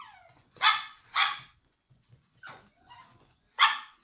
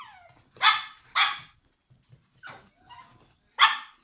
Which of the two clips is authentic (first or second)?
second